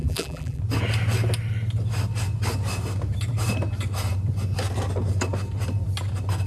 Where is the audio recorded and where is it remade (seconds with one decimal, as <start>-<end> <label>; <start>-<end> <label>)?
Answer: 0.0-0.6 remade; 0.6-6.5 recorded